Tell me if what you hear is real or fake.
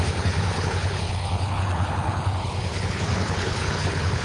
fake